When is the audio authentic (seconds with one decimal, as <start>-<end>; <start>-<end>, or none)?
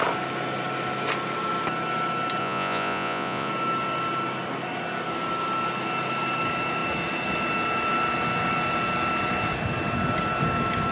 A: 0.0-2.4; 3.5-10.9